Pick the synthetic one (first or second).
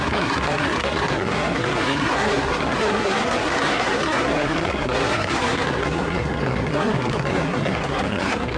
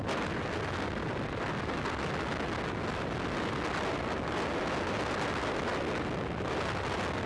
first